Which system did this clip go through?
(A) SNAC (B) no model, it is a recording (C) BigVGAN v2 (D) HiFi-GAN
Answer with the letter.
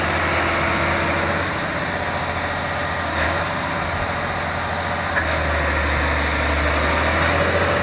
B